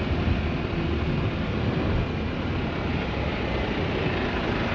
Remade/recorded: recorded